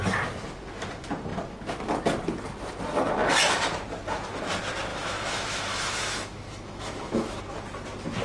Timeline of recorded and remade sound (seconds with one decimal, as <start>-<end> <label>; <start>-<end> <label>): 0.0-4.9 recorded; 4.9-7.4 remade; 7.4-8.2 recorded